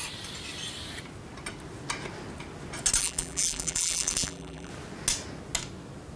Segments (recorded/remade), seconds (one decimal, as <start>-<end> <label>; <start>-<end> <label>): 0.0-3.0 recorded; 3.0-4.7 remade; 4.7-6.2 recorded